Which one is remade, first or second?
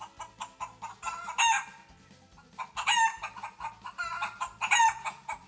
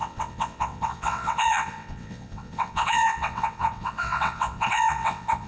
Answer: second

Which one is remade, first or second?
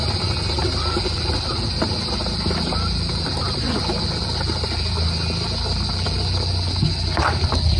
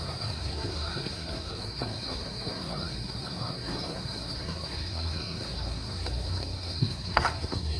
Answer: second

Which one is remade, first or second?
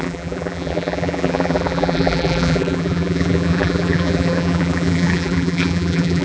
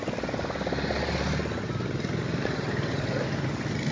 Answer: first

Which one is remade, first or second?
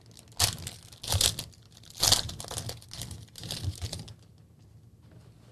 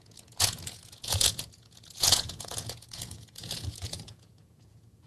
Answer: second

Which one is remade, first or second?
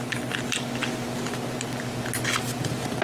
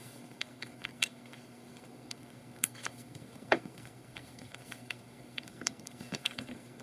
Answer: second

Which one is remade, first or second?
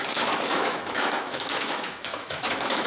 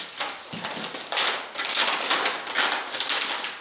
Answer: first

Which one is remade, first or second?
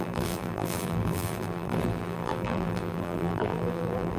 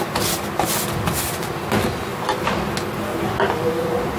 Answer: first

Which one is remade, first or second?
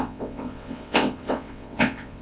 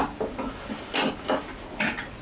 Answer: first